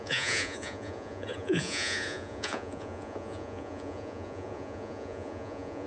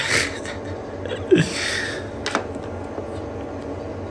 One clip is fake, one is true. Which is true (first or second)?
second